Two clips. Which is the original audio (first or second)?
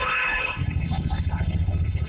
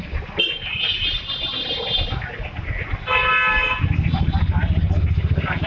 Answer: second